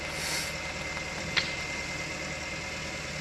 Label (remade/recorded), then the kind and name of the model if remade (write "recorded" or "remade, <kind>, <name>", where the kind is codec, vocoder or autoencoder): recorded